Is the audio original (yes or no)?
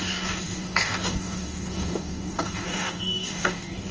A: no